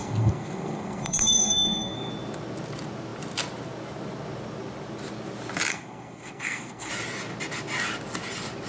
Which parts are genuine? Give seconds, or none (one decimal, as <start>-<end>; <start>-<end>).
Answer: 2.1-5.7; 6.9-8.7